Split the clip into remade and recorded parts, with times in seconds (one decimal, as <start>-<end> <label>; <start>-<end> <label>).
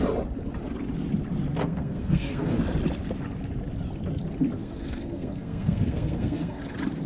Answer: 0.0-1.6 recorded; 1.6-2.6 remade; 2.6-4.6 recorded; 4.6-6.6 remade; 6.6-7.1 recorded